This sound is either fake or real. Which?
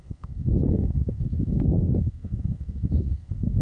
fake